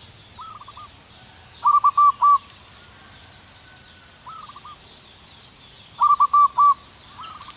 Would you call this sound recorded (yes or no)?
yes